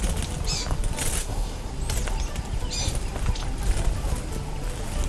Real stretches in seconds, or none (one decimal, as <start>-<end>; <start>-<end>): 0.0-1.2; 1.7-5.1

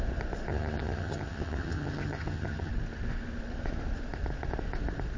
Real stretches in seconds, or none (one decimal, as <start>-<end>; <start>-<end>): 0.0-0.5; 2.7-5.2

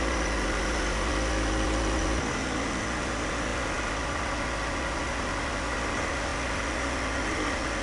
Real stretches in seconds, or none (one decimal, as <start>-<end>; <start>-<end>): 0.0-7.8

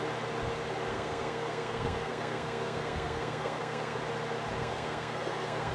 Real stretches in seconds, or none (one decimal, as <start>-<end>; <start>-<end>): 0.0-0.9; 4.0-4.6

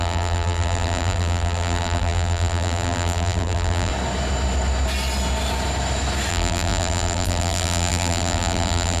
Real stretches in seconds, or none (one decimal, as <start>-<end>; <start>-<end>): 3.9-6.3

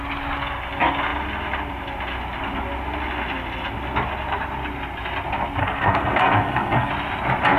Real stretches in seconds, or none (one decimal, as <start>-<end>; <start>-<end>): 0.0-5.6; 6.9-7.6

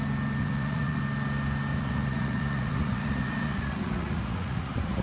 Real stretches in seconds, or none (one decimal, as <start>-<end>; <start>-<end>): 0.0-0.4; 1.0-1.7